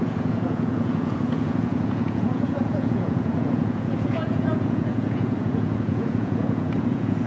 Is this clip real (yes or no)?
no